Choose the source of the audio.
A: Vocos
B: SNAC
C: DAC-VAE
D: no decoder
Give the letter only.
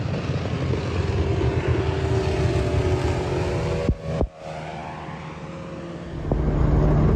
D